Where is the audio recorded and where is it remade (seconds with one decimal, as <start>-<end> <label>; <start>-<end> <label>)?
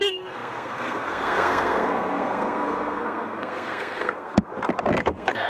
0.0-4.5 remade; 4.5-5.0 recorded; 5.0-5.5 remade